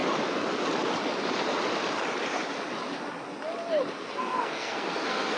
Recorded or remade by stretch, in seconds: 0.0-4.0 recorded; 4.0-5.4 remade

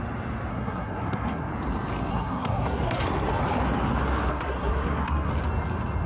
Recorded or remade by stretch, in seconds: 0.0-0.5 recorded; 0.5-1.5 remade; 1.5-2.1 recorded; 2.1-3.0 remade; 3.0-4.3 recorded; 4.3-5.3 remade; 5.3-6.1 recorded

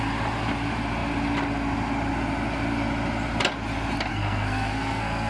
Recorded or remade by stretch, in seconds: 0.0-4.1 recorded; 4.1-5.3 remade

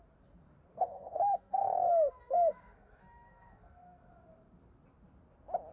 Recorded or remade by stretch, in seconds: 0.0-0.7 recorded; 0.7-4.1 remade; 4.1-5.7 recorded

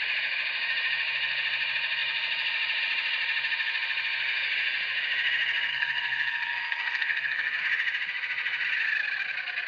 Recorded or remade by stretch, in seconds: 0.0-5.7 recorded; 5.7-7.6 remade; 7.6-9.7 recorded

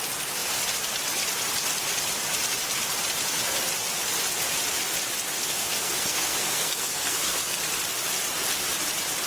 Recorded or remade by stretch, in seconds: 0.0-5.4 recorded; 5.4-7.6 remade; 7.6-9.3 recorded

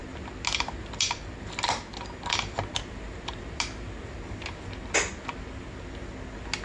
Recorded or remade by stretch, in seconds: 0.0-6.6 recorded

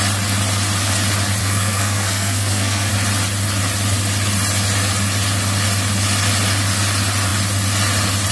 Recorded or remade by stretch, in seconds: 0.0-1.4 recorded; 1.4-2.9 remade; 2.9-8.3 recorded